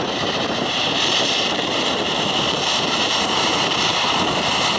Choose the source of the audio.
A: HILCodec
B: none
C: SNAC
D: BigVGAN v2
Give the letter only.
D